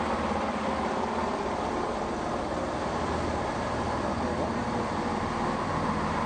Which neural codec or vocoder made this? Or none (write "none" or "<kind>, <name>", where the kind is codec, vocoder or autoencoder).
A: none